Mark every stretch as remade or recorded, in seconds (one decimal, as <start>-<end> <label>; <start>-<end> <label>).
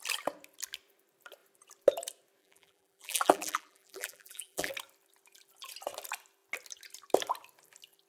0.0-2.4 recorded; 2.4-4.7 remade; 4.7-8.1 recorded